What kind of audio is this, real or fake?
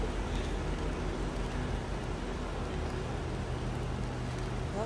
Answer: real